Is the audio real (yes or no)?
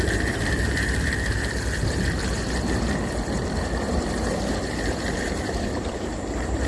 no